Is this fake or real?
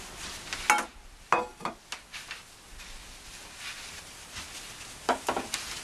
real